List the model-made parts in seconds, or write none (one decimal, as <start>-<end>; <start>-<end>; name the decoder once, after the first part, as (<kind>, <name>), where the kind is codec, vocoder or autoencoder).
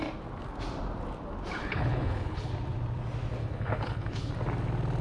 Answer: 1.6-2.5 (codec, HILCodec); 3.4-4.3